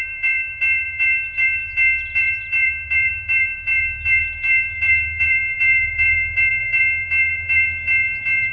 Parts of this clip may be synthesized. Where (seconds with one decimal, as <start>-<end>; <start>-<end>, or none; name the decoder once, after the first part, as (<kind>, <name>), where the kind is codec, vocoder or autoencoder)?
0.0-1.7 (vocoder, BigVGAN v2); 2.2-8.5

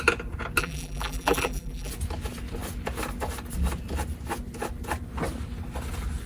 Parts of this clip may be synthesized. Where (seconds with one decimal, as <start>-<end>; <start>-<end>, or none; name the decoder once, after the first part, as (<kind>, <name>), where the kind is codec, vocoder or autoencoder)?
0.6-1.9 (vocoder, BigVGAN v2)

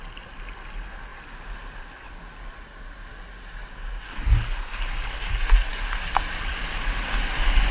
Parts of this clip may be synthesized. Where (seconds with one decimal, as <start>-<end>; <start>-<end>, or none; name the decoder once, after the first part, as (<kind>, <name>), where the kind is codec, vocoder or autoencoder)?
5.7-6.5 (vocoder, BigVGAN v2)

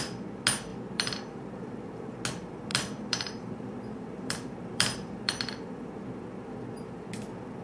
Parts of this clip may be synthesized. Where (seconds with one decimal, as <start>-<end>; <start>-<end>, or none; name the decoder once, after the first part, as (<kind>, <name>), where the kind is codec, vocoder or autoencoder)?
0.7-2.1 (vocoder, BigVGAN v2); 2.7-6.0

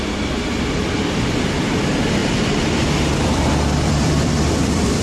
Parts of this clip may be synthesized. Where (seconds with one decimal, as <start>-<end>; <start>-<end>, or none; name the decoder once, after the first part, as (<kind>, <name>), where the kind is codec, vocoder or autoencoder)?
1.0-1.8 (vocoder, BigVGAN v2); 2.2-5.0

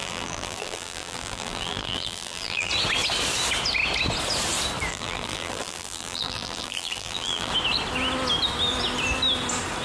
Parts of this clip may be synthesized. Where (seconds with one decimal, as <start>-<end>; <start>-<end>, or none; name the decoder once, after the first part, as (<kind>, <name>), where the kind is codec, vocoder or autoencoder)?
0.0-2.7 (vocoder, BigVGAN v2); 4.9-7.5

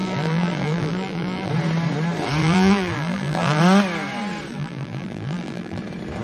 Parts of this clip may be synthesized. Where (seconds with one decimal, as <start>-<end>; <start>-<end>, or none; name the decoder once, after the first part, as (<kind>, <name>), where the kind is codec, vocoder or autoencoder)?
0.0-1.5 (vocoder, BigVGAN v2); 2.4-3.6; 4.5-5.8

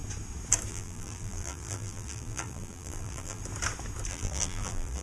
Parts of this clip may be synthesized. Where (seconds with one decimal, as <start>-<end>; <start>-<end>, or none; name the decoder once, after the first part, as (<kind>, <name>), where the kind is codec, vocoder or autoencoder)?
0.7-3.4 (vocoder, BigVGAN v2); 4.1-5.0